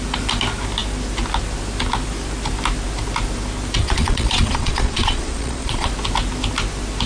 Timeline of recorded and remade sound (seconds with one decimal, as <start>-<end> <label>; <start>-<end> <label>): 0.0-3.8 recorded; 3.8-5.9 remade; 5.9-7.1 recorded